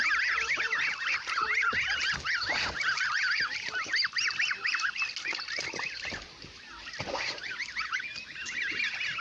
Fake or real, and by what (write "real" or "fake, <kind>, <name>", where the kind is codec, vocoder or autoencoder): real